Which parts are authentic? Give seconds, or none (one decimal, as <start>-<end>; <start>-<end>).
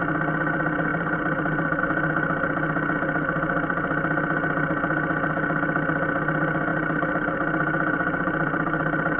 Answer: 0.0-0.9; 1.8-6.7